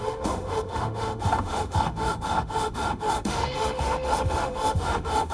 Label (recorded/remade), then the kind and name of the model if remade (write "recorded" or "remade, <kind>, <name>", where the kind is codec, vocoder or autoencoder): remade, autoencoder, DAC-VAE